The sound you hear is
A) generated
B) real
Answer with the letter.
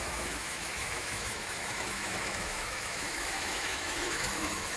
A